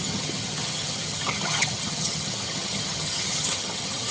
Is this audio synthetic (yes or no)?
yes